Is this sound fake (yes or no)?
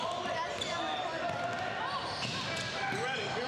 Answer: no